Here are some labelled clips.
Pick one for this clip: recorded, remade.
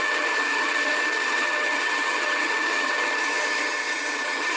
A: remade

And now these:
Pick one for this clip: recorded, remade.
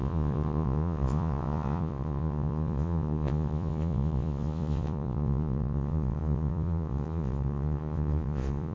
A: remade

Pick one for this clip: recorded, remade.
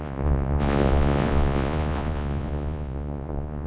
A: remade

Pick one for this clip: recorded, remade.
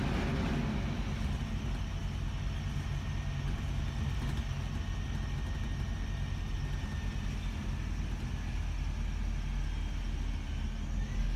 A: recorded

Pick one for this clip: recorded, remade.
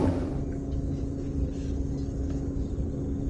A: recorded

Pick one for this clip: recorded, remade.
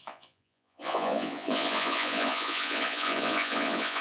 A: remade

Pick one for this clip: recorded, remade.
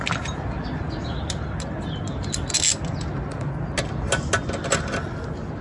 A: recorded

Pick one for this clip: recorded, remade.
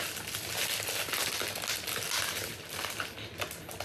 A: recorded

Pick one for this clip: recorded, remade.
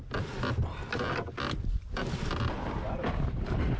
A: recorded